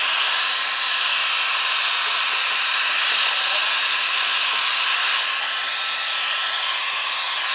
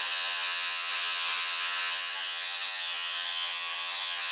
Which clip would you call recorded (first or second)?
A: first